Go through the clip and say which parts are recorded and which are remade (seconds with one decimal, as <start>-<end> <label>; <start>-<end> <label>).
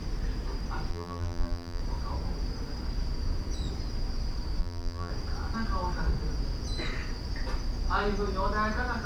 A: 0.0-0.9 recorded; 0.9-1.8 remade; 1.8-4.6 recorded; 4.6-5.1 remade; 5.1-9.0 recorded